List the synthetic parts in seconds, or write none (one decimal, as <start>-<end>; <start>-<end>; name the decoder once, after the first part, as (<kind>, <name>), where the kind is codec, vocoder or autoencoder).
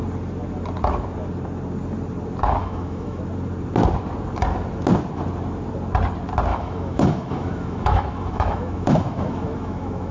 2.6-3.2 (autoencoder, DAC-VAE); 6.5-10.1